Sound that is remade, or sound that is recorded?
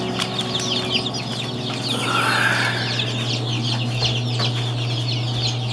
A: recorded